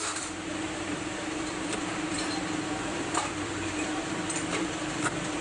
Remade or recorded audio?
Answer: remade